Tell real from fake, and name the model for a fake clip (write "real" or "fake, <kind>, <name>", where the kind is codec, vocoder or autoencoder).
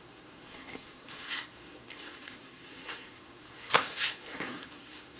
fake, codec, SNAC